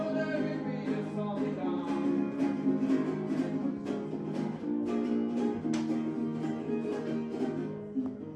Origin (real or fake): real